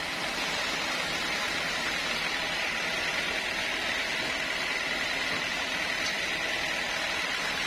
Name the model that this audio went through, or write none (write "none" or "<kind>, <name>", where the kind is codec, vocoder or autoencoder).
none